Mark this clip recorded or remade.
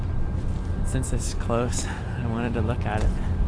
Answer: recorded